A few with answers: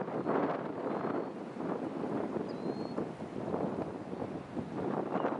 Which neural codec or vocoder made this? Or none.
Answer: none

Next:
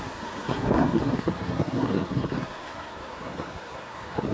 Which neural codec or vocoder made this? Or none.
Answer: codec, SNAC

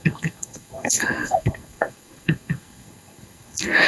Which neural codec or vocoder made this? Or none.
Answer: codec, SNAC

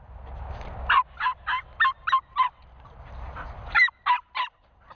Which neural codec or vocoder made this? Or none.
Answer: none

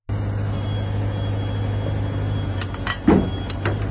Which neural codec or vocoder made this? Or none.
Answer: none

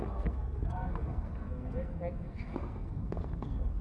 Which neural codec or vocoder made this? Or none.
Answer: codec, SNAC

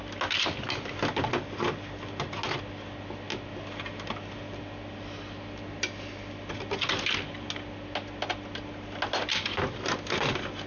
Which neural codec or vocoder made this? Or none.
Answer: none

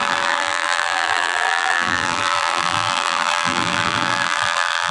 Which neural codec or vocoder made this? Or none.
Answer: vocoder, BigVGAN v2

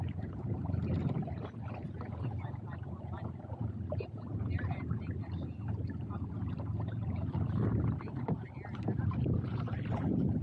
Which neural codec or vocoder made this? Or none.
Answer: none